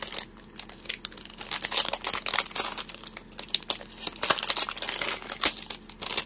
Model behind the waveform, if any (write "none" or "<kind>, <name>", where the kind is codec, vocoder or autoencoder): none